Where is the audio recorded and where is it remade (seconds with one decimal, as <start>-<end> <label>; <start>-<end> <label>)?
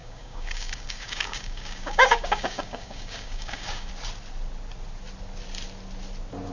0.0-3.9 remade; 3.9-6.5 recorded